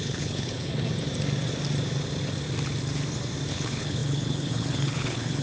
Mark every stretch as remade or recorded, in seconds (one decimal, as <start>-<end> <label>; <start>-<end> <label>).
0.0-0.7 remade; 0.7-3.5 recorded; 3.5-5.4 remade